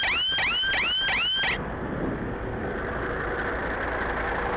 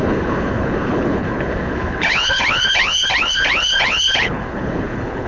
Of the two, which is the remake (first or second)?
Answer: second